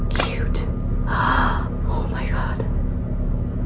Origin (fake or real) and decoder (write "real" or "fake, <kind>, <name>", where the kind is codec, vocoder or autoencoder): real